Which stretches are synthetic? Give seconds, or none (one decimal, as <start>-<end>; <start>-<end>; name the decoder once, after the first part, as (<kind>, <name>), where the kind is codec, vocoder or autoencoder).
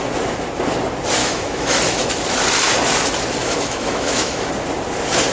1.2-2.1 (autoencoder, DAC-VAE); 3.4-4.5